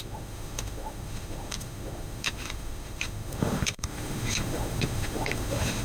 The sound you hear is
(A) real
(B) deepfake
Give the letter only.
B